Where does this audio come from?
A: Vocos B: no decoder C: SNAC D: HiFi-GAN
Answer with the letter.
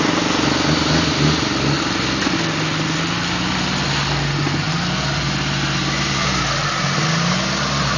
B